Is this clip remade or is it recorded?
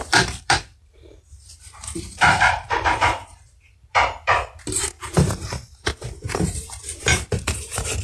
remade